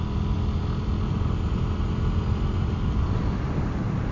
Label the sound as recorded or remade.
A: recorded